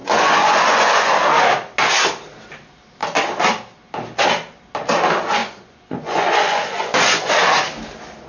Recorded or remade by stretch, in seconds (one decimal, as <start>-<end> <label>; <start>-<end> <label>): 0.0-1.1 remade; 1.1-5.4 recorded; 5.4-7.3 remade; 7.3-8.3 recorded